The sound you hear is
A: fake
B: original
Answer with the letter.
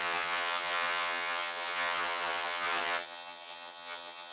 A